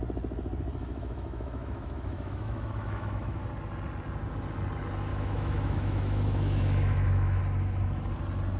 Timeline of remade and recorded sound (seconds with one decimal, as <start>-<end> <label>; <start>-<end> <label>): 0.0-0.8 recorded; 0.8-3.4 remade; 3.4-5.1 recorded; 5.1-7.4 remade; 7.4-8.6 recorded